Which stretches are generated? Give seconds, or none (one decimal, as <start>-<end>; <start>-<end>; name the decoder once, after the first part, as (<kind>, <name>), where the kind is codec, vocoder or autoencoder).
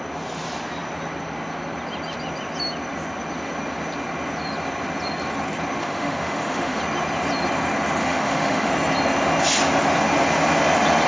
5.8-6.8 (autoencoder, DAC-VAE); 8.0-8.7